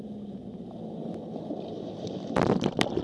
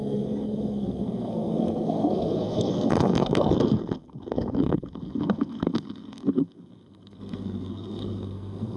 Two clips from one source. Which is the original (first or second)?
first